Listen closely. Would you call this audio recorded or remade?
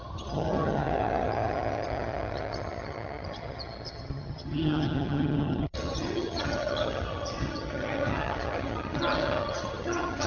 remade